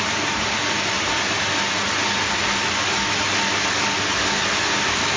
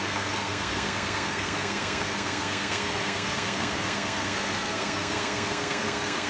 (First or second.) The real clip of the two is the first